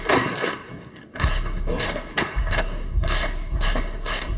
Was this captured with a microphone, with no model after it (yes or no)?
no